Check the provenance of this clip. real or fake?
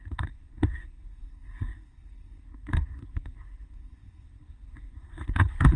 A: fake